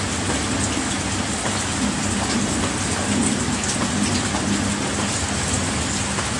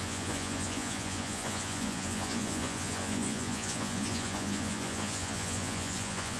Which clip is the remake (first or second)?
second